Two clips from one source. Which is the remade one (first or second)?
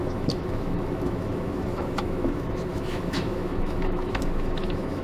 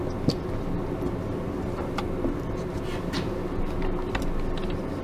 first